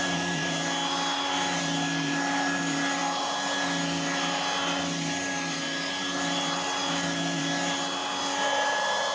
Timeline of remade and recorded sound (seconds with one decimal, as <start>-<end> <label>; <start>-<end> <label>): 0.0-9.1 recorded